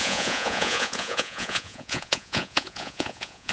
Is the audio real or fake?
fake